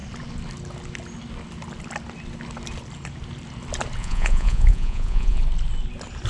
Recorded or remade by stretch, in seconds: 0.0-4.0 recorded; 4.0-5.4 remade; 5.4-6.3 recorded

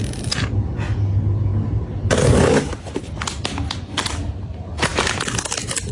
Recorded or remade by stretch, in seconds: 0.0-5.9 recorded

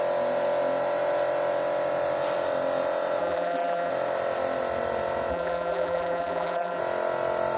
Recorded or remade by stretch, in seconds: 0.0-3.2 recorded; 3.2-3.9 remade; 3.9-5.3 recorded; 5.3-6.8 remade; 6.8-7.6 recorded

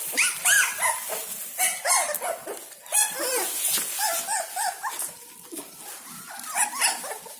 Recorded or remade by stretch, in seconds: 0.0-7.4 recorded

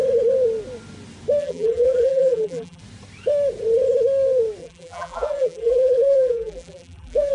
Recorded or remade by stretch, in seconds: 0.0-1.4 recorded; 1.4-2.8 remade; 2.8-4.6 recorded; 4.6-7.3 remade

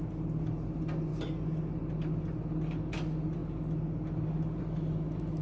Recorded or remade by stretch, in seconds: 0.0-5.4 recorded

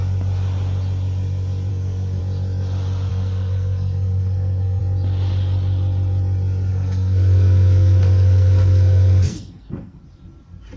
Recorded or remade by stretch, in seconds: 0.0-1.7 recorded; 1.7-2.2 remade; 2.2-3.1 recorded; 3.1-4.8 remade; 4.8-6.7 recorded; 6.7-10.0 remade; 10.0-10.8 recorded